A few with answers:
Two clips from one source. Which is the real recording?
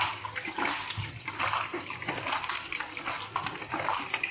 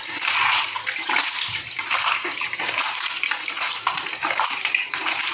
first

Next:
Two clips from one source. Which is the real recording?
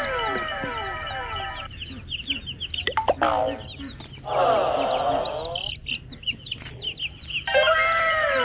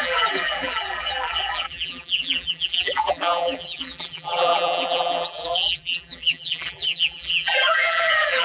first